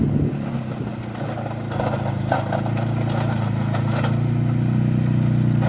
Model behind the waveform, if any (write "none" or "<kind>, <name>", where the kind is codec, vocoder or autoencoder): none